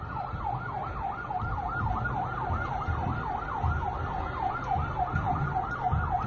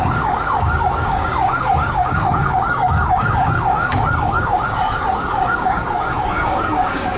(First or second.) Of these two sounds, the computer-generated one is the second